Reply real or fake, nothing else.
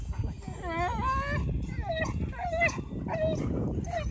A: real